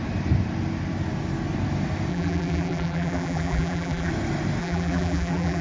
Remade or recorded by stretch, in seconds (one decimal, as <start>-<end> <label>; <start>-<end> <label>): 0.0-2.1 recorded; 2.1-4.1 remade; 4.1-4.6 recorded; 4.6-5.6 remade